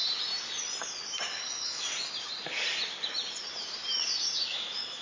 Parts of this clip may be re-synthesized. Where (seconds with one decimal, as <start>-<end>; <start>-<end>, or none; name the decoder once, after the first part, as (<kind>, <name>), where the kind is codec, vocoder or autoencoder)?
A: 1.4-1.9 (autoencoder, DAC-VAE); 4.4-5.0